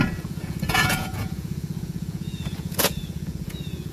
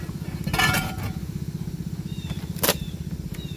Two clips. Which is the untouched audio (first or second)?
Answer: second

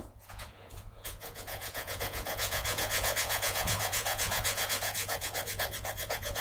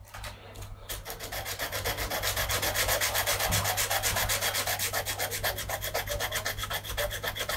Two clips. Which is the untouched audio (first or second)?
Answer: second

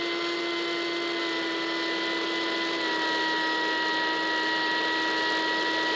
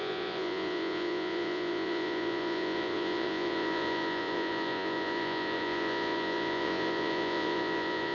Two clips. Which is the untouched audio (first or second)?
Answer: first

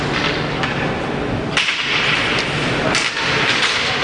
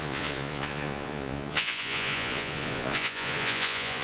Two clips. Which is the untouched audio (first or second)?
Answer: first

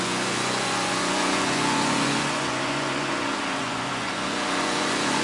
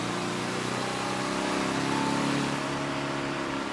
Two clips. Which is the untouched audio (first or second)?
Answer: second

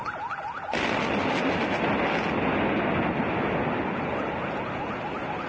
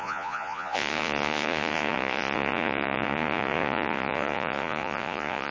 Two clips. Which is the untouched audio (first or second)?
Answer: first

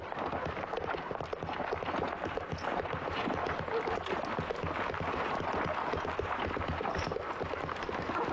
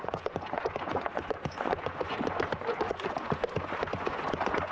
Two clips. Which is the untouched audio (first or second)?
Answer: first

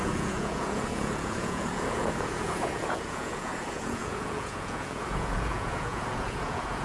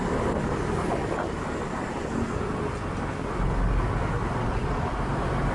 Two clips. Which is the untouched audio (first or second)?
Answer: second